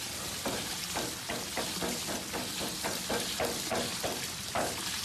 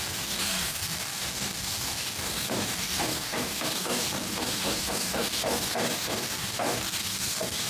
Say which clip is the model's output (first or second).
second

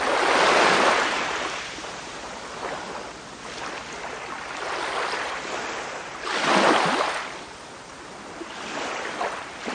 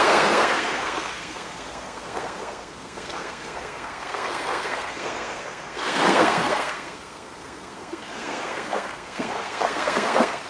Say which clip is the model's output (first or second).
second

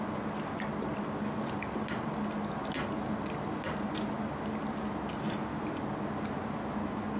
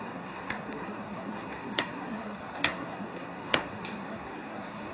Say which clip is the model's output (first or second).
second